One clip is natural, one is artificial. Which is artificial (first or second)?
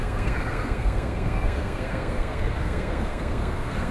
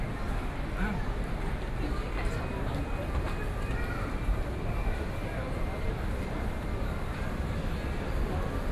first